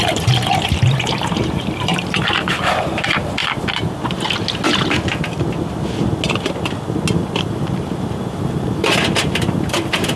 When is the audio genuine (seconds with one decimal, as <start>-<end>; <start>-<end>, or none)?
3.4-8.0